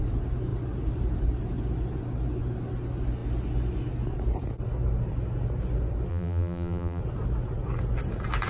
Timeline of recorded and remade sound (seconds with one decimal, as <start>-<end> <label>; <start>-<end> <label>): 0.0-6.1 recorded; 6.1-7.0 remade; 7.0-8.5 recorded